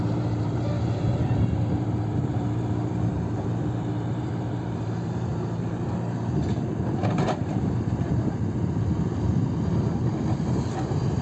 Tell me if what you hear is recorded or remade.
remade